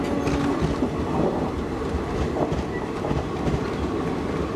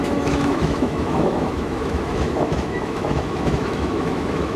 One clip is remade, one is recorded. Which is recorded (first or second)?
first